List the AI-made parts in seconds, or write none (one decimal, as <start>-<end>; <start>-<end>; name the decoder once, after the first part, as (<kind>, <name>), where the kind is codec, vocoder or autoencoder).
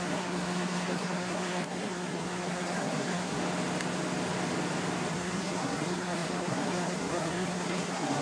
0.0-3.4 (codec, SNAC); 5.1-8.2